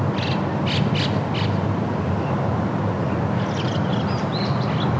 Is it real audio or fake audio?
real